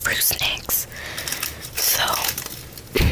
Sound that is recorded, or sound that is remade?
recorded